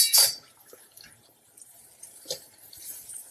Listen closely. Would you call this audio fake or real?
fake